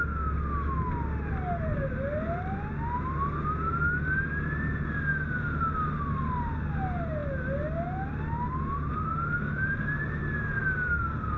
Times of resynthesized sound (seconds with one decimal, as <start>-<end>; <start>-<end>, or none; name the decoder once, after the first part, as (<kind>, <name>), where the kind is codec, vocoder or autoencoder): none